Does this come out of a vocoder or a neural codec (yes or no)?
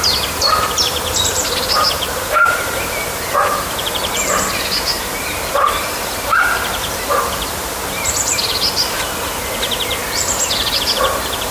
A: yes